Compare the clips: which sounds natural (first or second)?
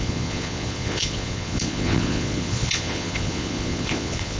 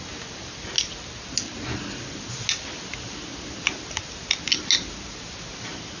second